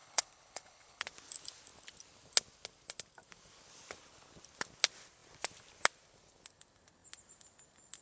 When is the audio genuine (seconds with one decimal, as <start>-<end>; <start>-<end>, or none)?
1.0-8.0